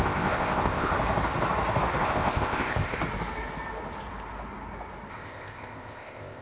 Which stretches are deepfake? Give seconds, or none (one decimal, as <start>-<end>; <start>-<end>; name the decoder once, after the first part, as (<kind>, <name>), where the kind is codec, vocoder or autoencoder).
0.0-0.9 (codec, ZipCodec); 2.0-3.0; 5.1-6.4